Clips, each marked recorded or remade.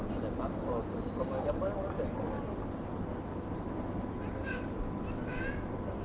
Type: recorded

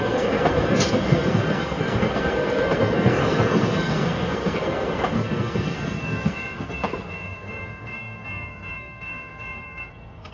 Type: remade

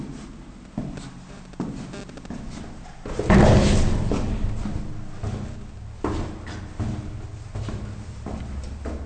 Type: remade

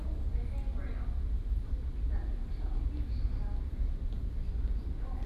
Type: recorded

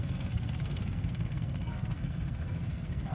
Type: remade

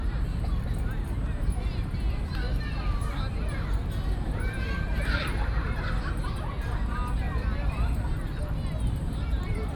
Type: recorded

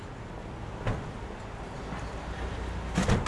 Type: recorded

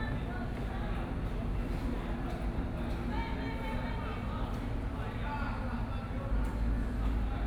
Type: recorded